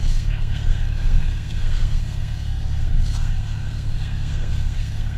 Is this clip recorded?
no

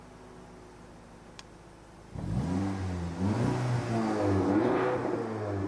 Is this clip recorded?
yes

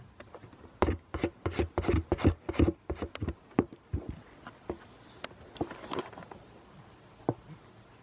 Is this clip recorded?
yes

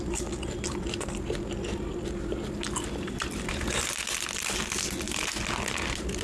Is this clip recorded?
yes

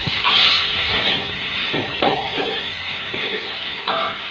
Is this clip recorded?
no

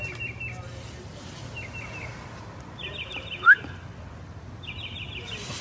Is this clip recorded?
yes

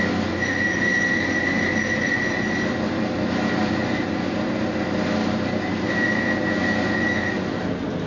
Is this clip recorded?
yes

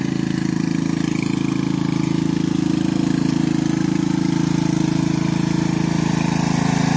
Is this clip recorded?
yes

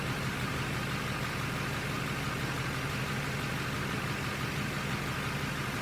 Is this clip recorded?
yes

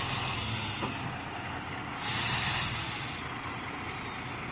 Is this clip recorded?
yes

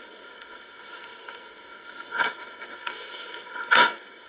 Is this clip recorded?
no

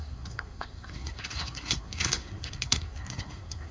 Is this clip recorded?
no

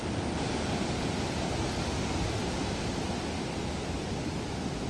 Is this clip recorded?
yes